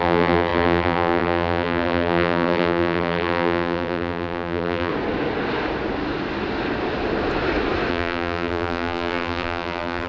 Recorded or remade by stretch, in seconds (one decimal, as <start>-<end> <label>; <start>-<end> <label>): 0.0-4.9 remade; 4.9-7.9 recorded; 7.9-10.1 remade